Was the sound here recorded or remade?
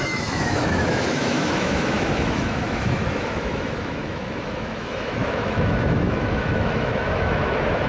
remade